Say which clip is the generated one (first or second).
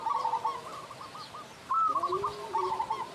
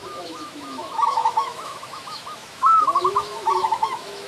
second